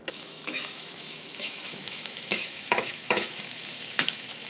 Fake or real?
fake